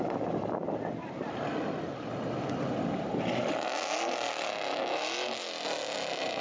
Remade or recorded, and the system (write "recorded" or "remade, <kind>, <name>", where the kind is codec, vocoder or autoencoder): recorded